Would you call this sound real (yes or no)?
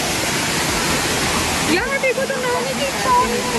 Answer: yes